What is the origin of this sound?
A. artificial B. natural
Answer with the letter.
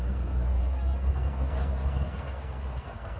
A